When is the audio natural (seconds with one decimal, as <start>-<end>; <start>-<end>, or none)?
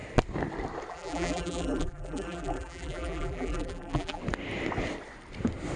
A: 0.0-0.9; 4.2-5.8